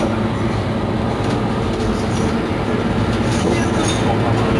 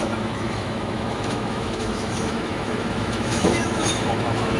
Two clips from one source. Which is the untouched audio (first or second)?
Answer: first